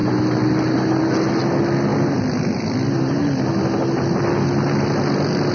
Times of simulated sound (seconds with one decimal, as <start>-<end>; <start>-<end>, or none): none